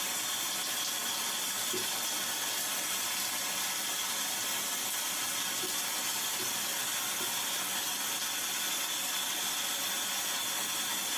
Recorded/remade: recorded